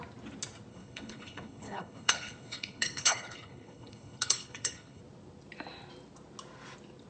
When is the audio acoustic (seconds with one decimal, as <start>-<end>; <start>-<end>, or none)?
0.0-0.7; 5.0-7.1